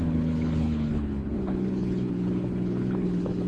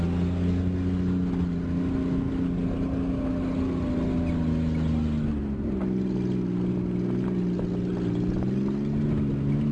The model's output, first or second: first